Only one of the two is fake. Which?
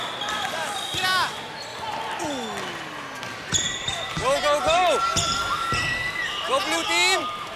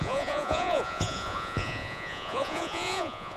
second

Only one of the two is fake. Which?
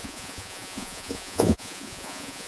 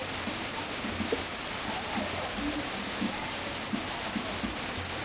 first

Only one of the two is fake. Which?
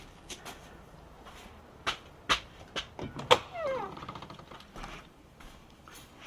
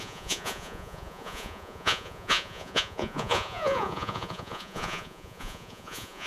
second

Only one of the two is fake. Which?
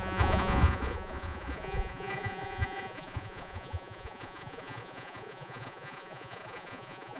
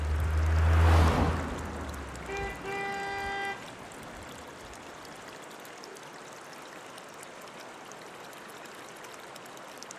first